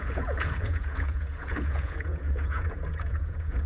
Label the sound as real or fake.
fake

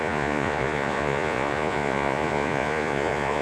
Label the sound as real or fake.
fake